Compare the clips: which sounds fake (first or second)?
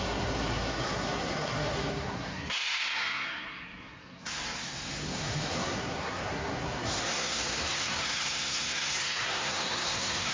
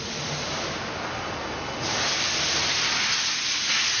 first